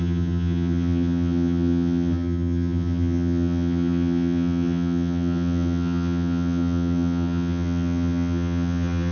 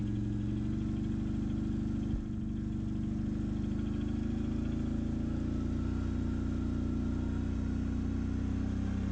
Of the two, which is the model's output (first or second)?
first